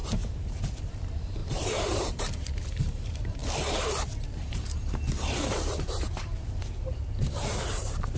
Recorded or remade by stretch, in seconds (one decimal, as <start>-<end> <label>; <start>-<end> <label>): 0.0-3.4 remade; 3.4-4.2 recorded; 4.2-8.2 remade